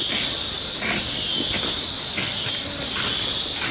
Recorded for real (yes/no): yes